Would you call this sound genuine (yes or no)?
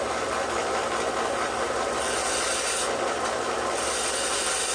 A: yes